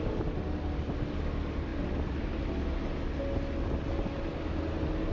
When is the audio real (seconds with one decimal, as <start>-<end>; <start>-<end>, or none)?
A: 0.0-5.1